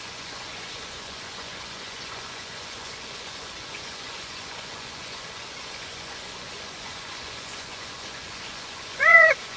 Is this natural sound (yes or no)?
no